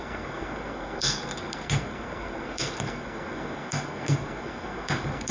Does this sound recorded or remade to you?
remade